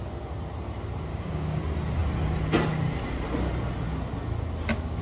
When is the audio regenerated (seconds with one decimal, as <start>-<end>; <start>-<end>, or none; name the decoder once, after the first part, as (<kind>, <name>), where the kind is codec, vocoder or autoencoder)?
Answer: 1.1-1.6 (codec, DAC)